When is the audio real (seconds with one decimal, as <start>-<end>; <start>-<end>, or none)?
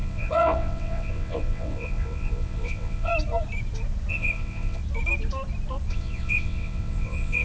3.1-4.1; 4.8-5.9